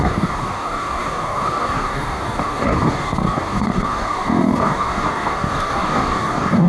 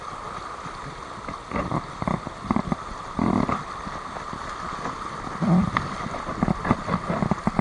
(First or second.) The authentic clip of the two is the second